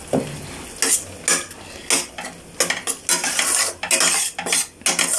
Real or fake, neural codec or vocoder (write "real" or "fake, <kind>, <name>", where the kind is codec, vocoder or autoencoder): real